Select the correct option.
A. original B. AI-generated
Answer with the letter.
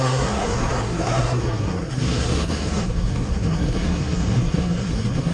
B